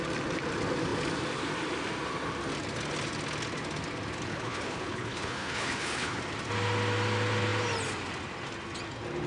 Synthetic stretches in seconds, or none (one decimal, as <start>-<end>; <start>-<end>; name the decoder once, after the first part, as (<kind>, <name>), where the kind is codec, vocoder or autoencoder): 4.3-6.2 (codec, HILCodec)